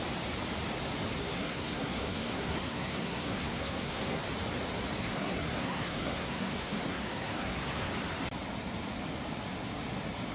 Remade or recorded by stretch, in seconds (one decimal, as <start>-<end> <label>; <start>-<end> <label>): 0.0-1.2 recorded; 1.2-4.2 remade; 4.2-5.0 recorded; 5.0-7.9 remade; 7.9-10.3 recorded